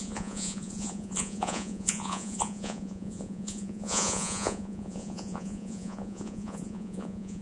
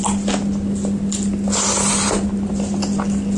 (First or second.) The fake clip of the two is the first